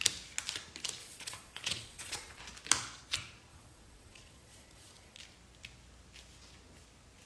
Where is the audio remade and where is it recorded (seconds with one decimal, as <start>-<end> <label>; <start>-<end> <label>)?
0.0-1.0 recorded; 1.0-2.4 remade; 2.4-3.5 recorded; 3.5-5.2 remade; 5.2-7.3 recorded